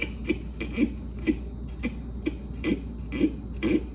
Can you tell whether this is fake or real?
real